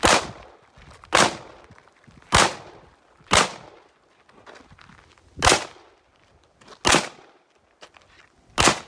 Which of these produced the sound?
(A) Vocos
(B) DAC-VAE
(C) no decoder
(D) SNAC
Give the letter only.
C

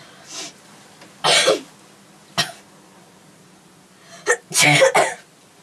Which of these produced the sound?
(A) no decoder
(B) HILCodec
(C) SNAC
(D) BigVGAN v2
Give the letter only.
A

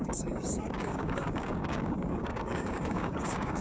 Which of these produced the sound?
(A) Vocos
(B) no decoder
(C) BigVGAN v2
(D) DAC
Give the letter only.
D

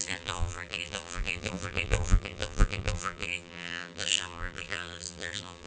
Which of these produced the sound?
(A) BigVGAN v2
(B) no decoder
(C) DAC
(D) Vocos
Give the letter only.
A